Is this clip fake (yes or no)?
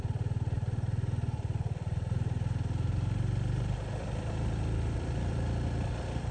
no